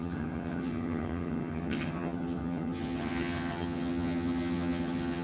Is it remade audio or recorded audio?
remade